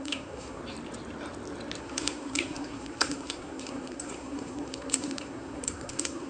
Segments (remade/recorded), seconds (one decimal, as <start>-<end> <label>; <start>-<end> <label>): 0.0-0.6 remade; 0.6-1.8 recorded; 1.8-6.3 remade